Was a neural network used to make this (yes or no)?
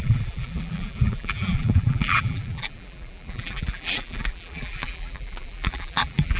yes